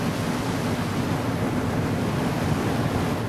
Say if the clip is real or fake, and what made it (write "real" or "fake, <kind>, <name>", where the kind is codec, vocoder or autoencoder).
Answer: real